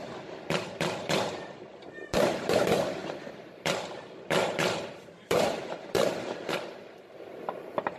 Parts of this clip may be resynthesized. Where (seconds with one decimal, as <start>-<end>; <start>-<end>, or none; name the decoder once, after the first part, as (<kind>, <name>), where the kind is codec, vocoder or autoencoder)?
0.0-8.0 (vocoder, BigVGAN v2)